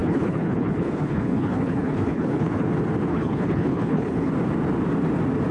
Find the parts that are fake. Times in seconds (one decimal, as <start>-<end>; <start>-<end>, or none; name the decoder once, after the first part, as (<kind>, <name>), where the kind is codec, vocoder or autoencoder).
0.0-2.7 (codec, HILCodec); 3.1-4.3